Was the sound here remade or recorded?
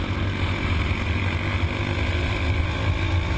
recorded